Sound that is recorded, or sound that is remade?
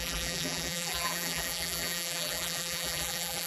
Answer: remade